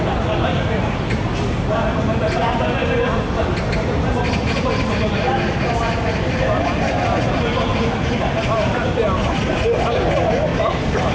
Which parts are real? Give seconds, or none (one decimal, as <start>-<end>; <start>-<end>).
0.0-10.5